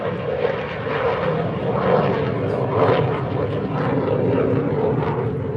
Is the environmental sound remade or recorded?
recorded